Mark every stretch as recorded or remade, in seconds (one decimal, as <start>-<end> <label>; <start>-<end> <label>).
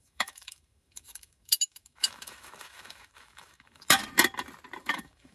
0.0-4.0 remade; 4.0-4.8 recorded; 4.8-5.3 remade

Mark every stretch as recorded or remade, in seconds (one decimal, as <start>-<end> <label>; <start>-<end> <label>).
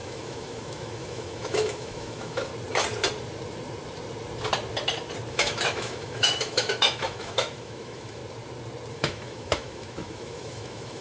0.0-2.5 remade; 2.5-5.3 recorded; 5.3-8.2 remade; 8.2-8.9 recorded; 8.9-11.0 remade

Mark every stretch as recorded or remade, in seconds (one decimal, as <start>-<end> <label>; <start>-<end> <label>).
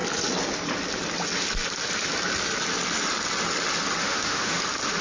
0.0-4.0 recorded; 4.0-4.6 remade; 4.6-5.0 recorded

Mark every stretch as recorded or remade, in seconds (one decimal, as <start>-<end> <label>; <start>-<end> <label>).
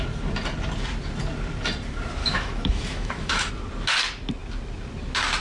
0.0-2.2 recorded; 2.2-3.5 remade; 3.5-5.4 recorded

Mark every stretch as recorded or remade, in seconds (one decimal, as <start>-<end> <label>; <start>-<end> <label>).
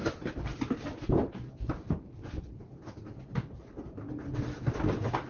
0.0-5.3 recorded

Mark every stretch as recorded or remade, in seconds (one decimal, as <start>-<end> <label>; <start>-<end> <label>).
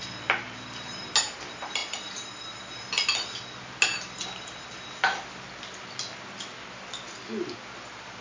0.0-8.2 recorded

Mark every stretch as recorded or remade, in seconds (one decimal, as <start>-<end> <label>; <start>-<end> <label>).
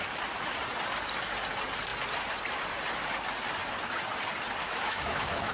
0.0-4.6 recorded; 4.6-5.5 remade